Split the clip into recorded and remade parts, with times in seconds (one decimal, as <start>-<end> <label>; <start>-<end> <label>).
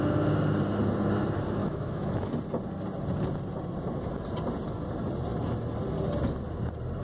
0.0-1.6 recorded; 1.6-2.3 remade; 2.3-7.0 recorded